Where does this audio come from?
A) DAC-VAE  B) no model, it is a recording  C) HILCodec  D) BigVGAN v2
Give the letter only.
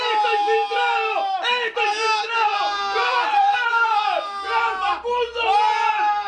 B